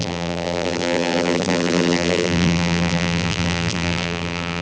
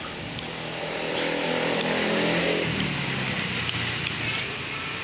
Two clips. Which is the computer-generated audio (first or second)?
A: first